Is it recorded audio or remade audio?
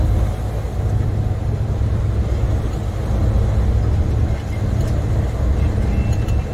recorded